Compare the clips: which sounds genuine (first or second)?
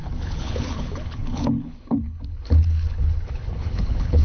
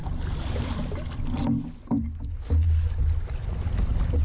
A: second